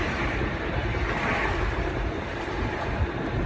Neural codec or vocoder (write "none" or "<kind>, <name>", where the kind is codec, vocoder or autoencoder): none